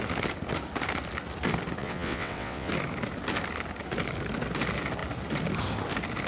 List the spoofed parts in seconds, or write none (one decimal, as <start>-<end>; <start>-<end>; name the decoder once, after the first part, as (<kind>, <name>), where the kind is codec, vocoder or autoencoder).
1.8-2.7 (vocoder, WaveNeXt)